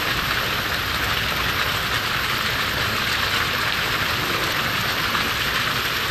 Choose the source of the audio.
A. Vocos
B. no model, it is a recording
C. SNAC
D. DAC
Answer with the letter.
B